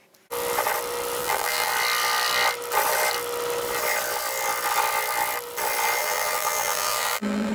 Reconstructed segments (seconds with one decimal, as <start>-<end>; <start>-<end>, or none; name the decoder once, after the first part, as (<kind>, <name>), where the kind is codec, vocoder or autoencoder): 1.2-1.7 (vocoder, BigVGAN v2); 6.0-7.5